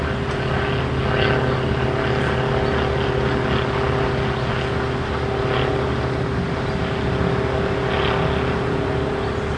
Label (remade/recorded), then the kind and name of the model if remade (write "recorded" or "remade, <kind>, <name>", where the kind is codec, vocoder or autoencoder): recorded